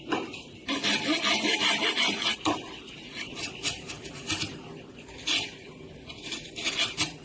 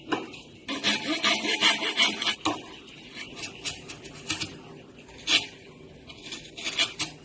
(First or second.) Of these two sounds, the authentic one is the second